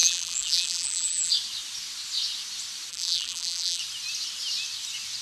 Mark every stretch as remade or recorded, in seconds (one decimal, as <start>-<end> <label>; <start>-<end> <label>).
0.0-1.3 remade; 1.3-2.9 recorded; 2.9-3.8 remade; 3.8-5.2 recorded